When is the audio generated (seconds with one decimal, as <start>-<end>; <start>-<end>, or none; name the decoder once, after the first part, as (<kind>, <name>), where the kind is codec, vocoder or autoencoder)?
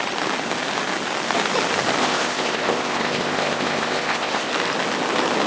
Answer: 2.0-4.5 (codec, ZipCodec)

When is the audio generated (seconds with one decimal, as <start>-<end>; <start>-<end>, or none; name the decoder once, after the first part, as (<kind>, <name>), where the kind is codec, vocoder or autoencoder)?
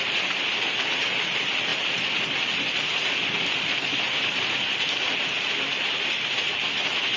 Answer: none